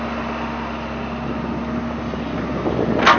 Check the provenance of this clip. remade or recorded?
recorded